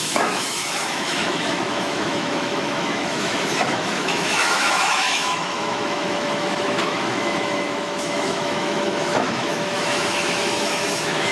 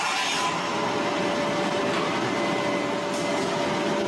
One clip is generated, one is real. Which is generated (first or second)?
first